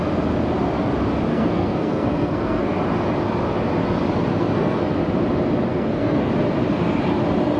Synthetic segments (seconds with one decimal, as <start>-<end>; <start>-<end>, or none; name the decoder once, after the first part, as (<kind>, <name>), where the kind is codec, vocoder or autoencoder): 1.3-2.6 (codec, SNAC); 4.3-4.8; 5.7-6.3